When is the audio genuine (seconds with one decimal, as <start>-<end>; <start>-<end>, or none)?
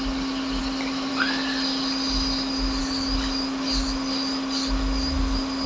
0.0-5.7